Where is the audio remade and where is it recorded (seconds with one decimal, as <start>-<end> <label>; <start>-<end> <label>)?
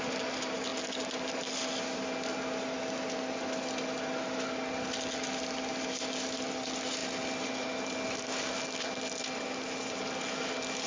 0.0-10.9 recorded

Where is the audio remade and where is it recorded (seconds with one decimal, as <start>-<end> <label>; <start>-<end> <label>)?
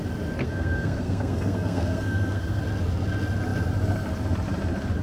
0.0-0.4 recorded; 0.4-2.6 remade; 2.6-5.0 recorded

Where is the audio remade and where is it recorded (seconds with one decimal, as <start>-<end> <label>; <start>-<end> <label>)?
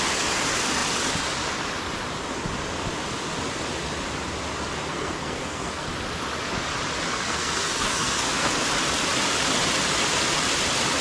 0.0-4.9 recorded; 4.9-5.9 remade; 5.9-7.1 recorded; 7.1-8.5 remade; 8.5-11.0 recorded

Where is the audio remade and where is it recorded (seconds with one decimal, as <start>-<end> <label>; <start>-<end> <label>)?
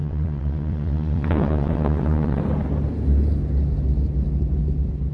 0.0-2.4 remade; 2.4-5.1 recorded